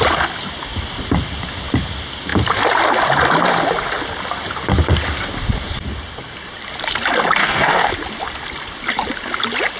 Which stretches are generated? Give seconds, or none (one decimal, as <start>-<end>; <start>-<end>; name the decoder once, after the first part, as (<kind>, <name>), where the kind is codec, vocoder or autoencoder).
7.4-7.9 (codec, DAC)